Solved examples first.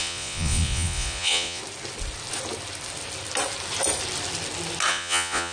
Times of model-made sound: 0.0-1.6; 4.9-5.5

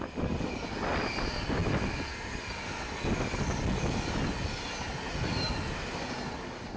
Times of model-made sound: none

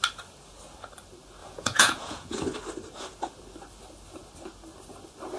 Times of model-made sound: 1.4-2.4

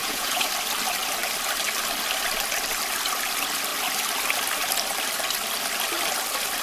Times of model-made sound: 0.0-0.5

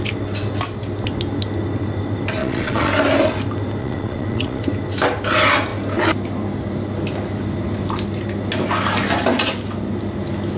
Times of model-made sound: 2.4-2.9; 3.8-4.6